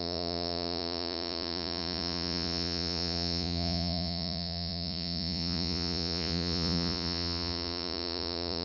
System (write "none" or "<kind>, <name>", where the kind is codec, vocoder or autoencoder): vocoder, Vocos